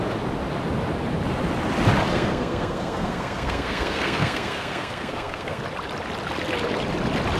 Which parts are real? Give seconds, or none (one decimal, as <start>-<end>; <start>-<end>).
0.0-2.1; 5.6-7.4

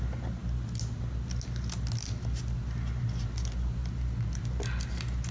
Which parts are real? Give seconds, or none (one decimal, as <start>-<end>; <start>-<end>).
0.0-5.3

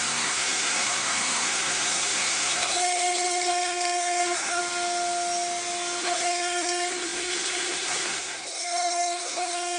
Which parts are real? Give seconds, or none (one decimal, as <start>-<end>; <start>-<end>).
4.6-6.0

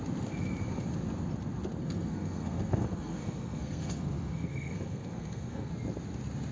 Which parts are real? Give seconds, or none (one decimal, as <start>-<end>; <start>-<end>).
0.0-1.8; 5.7-6.5

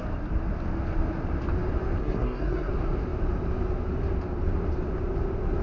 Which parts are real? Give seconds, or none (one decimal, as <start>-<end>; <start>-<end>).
0.0-2.0; 2.7-5.6

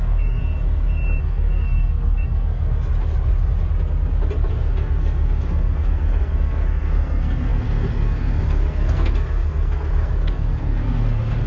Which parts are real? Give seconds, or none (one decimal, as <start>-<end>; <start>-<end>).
0.4-1.2; 2.9-4.5

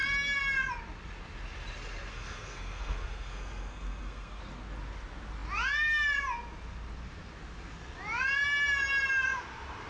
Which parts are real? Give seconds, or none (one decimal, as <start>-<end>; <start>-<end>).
0.0-2.1; 4.4-9.9

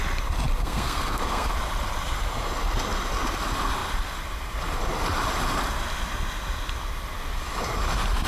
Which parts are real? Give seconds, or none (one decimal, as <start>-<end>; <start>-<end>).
0.0-0.6; 1.5-8.3